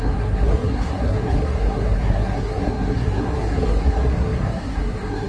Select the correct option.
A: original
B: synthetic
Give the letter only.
B